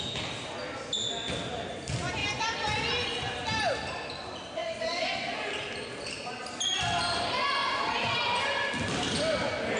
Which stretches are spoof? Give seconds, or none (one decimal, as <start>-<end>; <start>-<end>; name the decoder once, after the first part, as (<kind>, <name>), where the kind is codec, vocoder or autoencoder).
2.2-2.9 (vocoder, BigVGAN v2); 4.6-6.0; 7.6-8.9